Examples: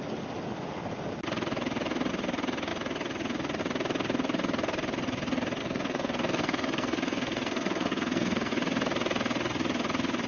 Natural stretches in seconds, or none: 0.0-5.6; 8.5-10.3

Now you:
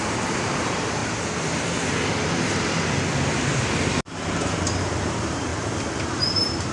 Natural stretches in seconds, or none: 1.0-3.3; 5.5-6.0

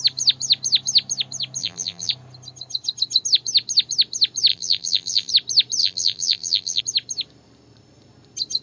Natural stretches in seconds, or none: 0.0-1.6; 2.1-4.5; 5.3-5.8; 6.8-8.6

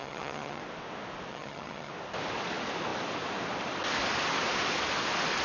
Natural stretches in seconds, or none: 0.6-1.3; 1.9-5.4

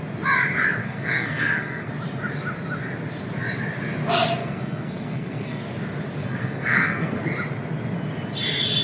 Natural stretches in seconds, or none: 0.0-0.8; 1.9-4.4; 5.6-6.2; 7.2-8.8

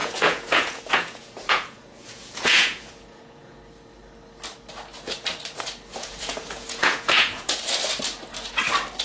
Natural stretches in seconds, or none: 3.6-5.9; 7.6-9.0

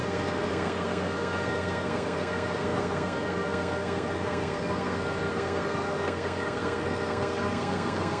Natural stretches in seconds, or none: none